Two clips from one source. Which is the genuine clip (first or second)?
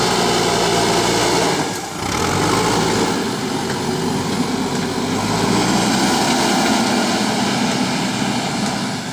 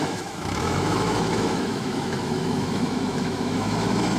first